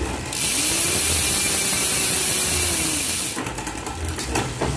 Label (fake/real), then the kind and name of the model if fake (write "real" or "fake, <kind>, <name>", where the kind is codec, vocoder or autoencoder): real